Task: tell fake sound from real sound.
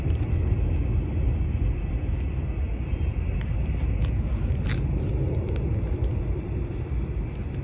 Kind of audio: real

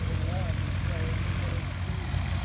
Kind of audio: real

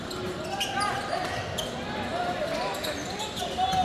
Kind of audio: real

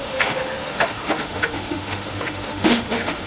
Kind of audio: fake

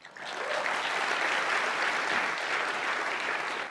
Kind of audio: real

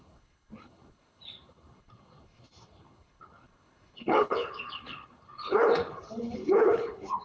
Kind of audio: fake